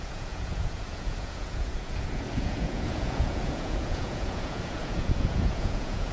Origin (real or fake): fake